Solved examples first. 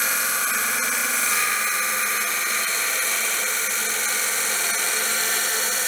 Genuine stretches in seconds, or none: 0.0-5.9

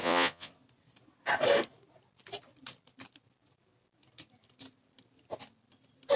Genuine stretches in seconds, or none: 0.5-6.2

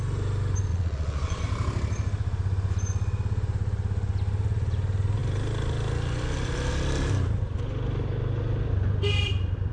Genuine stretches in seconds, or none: 0.0-0.7; 1.4-9.7

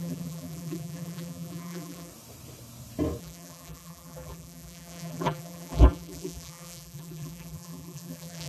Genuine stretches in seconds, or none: 2.1-3.2

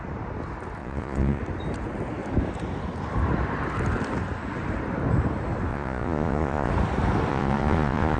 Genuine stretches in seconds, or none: 0.0-0.8; 1.4-5.7; 6.7-7.3

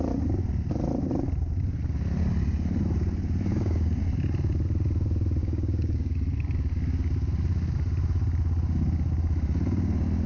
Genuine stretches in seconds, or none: 0.0-3.5; 4.0-5.4; 6.1-10.3